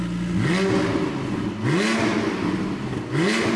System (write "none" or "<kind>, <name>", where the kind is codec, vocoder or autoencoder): none